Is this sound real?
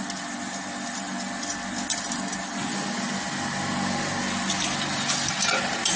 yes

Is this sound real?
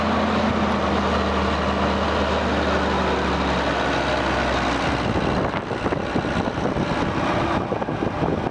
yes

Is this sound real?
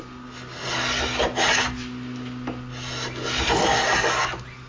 yes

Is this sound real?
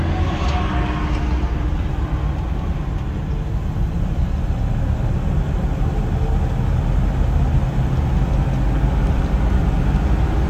yes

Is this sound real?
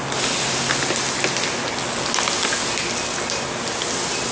yes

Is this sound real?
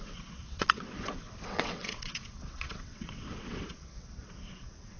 no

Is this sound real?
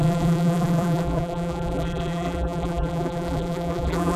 no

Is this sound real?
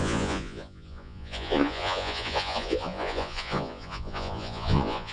no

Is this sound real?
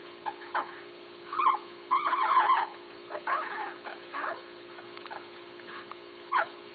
no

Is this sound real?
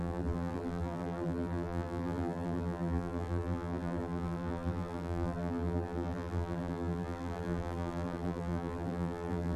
no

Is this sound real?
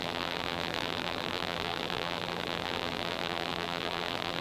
no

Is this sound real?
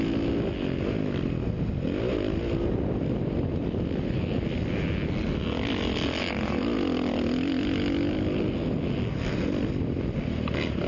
yes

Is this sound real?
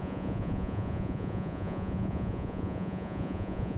no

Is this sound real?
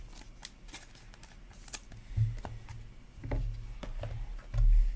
yes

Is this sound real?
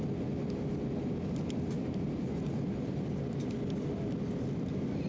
yes